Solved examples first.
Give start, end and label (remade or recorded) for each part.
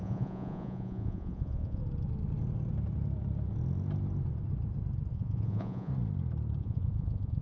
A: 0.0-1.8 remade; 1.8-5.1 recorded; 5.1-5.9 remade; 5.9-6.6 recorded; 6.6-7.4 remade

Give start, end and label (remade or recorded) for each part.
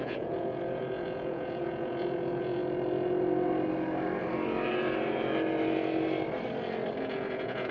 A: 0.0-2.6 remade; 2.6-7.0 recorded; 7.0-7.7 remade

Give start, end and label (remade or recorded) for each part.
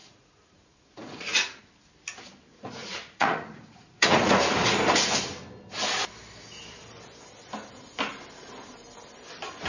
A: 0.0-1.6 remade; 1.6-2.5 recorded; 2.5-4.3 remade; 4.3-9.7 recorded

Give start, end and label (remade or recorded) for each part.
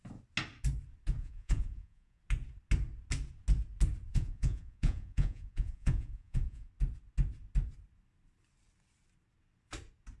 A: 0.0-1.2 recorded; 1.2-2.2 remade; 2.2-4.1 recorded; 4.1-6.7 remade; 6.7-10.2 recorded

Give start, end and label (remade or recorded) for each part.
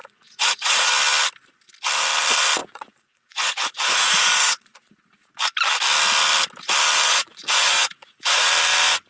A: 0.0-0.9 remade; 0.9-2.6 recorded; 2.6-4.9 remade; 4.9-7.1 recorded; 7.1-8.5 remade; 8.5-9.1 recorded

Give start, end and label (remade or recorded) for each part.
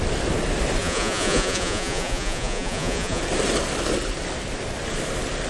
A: 0.0-0.8 recorded; 0.8-3.2 remade; 3.2-5.5 recorded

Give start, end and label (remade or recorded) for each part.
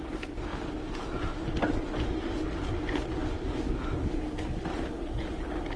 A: 0.0-5.8 recorded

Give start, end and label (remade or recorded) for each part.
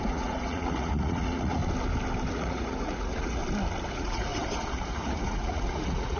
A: 0.0-1.6 remade; 1.6-2.3 recorded; 2.3-3.4 remade; 3.4-3.9 recorded; 3.9-4.3 remade; 4.3-4.9 recorded; 4.9-6.2 remade